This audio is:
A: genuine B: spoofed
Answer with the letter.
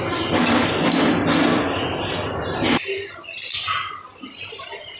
A